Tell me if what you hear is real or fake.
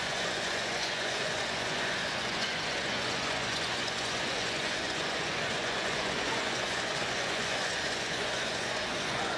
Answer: fake